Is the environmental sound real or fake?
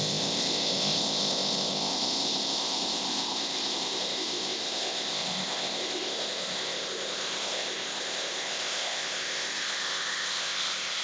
fake